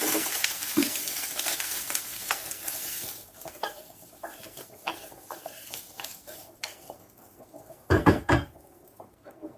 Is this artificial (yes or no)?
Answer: yes